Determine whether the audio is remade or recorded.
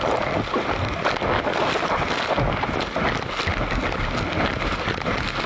recorded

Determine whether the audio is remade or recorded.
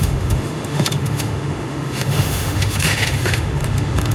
remade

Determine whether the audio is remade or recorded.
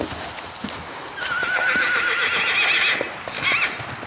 recorded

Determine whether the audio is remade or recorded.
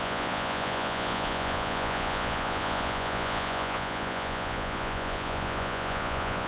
remade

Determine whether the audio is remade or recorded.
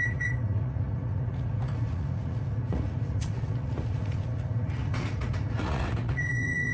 remade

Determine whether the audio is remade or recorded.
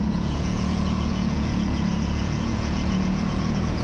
remade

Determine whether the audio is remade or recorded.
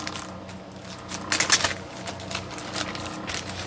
recorded